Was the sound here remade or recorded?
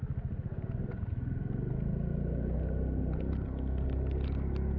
recorded